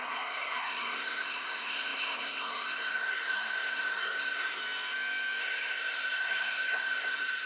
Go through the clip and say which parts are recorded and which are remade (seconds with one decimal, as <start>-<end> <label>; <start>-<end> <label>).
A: 0.0-4.6 remade; 4.6-5.4 recorded; 5.4-7.5 remade

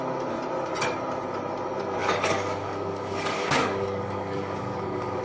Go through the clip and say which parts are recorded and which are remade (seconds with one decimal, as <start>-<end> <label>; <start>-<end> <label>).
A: 0.0-2.0 recorded; 2.0-5.2 remade